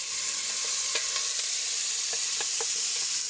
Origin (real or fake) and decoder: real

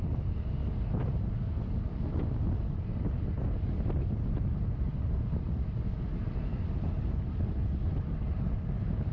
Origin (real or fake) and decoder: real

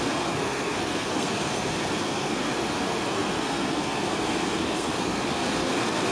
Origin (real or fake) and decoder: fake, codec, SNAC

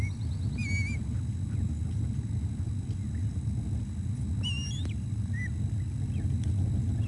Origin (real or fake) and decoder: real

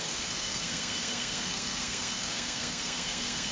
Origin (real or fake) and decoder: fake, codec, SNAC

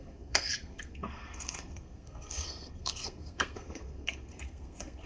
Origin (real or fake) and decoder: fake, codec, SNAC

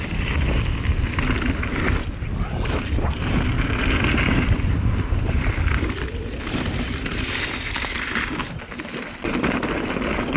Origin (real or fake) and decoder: real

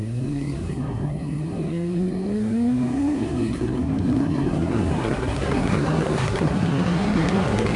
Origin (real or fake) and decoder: fake, codec, SNAC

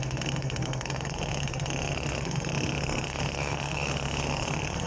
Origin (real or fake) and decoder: fake, codec, SNAC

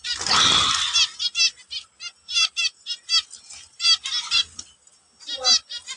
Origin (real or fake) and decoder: real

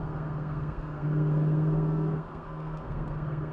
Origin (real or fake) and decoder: fake, codec, SNAC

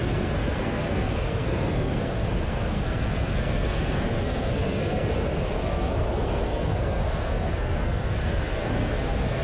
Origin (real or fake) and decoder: fake, codec, SNAC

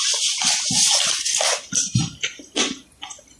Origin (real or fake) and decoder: real